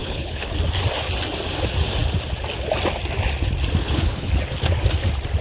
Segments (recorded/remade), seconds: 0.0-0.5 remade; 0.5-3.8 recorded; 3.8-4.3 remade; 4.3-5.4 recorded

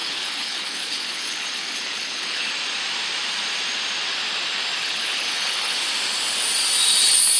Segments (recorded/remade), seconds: 0.0-2.5 remade; 2.5-4.8 recorded; 4.8-5.7 remade; 5.7-7.4 recorded

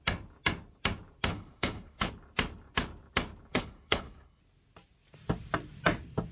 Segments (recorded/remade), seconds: 0.0-1.3 recorded; 1.3-2.1 remade; 2.1-3.5 recorded; 3.5-4.4 remade; 4.4-6.3 recorded

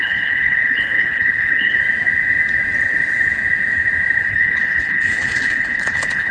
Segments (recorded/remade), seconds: 0.0-1.8 remade; 1.8-4.3 recorded; 4.3-6.3 remade